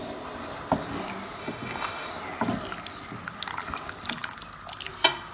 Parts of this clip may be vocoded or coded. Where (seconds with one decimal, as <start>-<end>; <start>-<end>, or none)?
1.4-2.1